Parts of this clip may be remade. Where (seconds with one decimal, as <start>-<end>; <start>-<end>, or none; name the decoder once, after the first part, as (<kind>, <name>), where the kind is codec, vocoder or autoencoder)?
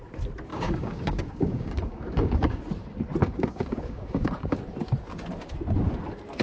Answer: 0.5-2.6 (codec, DAC); 3.2-4.6